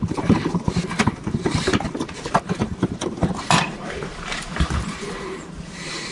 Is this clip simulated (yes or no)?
yes